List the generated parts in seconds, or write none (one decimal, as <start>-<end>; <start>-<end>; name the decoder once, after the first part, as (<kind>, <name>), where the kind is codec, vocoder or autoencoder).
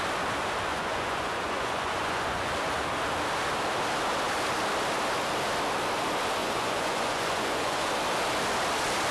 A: 0.7-2.5 (vocoder, Vocos); 6.4-7.9